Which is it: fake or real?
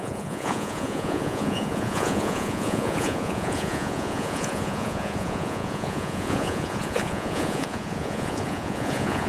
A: fake